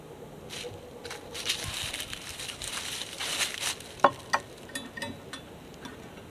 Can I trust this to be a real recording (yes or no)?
yes